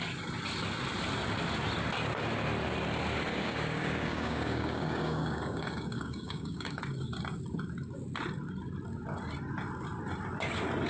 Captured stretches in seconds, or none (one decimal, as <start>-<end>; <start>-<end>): 0.0-3.3; 6.8-10.9